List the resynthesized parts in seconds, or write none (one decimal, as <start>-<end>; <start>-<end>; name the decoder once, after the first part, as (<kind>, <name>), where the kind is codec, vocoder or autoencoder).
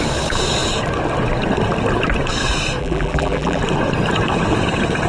2.8-3.6 (vocoder, BigVGAN v2)